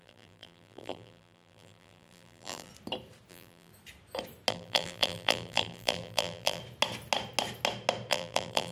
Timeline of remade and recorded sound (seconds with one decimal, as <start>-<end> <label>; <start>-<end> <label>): 0.0-2.7 remade; 2.7-3.3 recorded; 3.3-3.7 remade; 3.7-4.5 recorded; 4.5-6.6 remade; 6.6-8.1 recorded; 8.1-8.7 remade